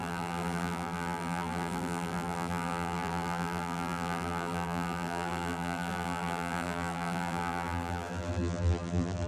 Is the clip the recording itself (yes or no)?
no